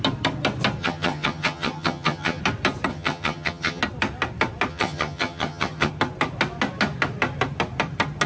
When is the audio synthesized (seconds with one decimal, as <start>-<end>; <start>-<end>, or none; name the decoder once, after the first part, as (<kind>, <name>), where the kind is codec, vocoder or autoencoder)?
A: 0.8-2.4 (vocoder, HiFi-GAN); 2.9-3.8; 4.7-5.9